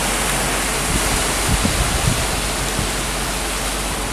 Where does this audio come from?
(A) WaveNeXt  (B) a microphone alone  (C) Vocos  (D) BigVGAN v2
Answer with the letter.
B